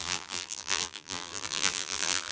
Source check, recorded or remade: remade